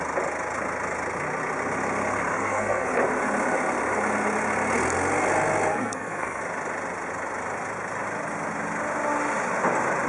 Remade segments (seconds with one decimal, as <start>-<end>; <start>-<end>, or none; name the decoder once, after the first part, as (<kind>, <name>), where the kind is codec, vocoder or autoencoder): 2.3-2.9 (codec, SNAC); 5.7-6.4